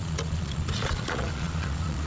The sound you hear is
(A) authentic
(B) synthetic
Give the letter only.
B